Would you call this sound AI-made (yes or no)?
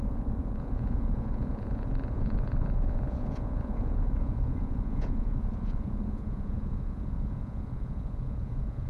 yes